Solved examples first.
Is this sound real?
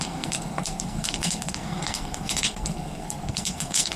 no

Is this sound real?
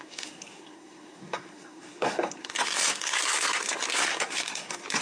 no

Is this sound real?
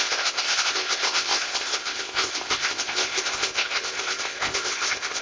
no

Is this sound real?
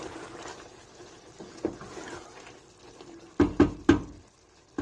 yes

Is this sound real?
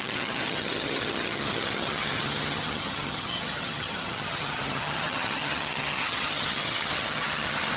no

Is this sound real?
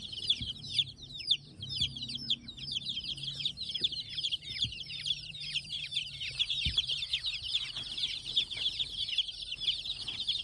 no